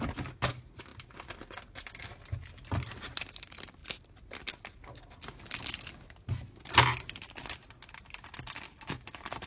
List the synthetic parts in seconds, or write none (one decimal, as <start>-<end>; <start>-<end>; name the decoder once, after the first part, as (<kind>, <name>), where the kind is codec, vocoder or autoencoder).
none